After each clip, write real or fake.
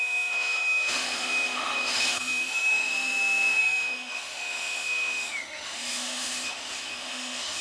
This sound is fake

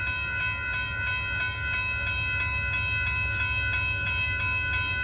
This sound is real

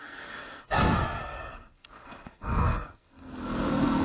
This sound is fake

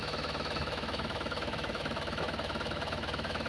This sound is fake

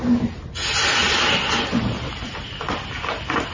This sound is real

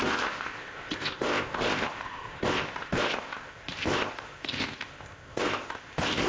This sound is fake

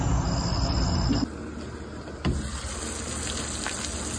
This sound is real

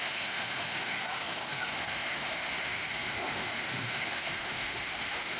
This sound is fake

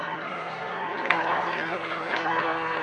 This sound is fake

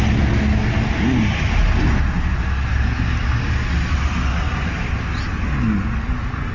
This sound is real